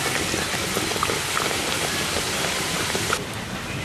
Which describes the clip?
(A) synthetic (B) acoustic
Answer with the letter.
B